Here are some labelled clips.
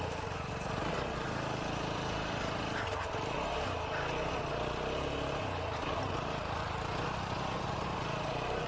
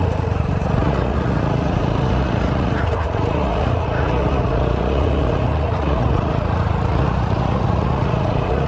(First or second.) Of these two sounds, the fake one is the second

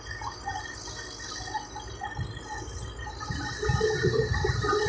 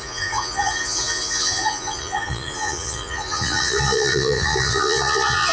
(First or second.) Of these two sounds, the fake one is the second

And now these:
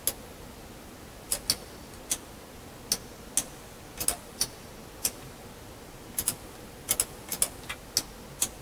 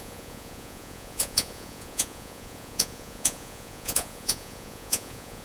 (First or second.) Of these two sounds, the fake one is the second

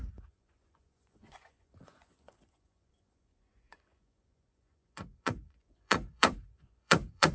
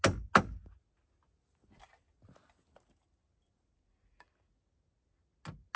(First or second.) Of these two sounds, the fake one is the first